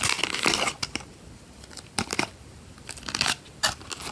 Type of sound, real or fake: fake